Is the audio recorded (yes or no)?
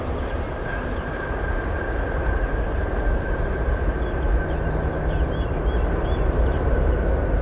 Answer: yes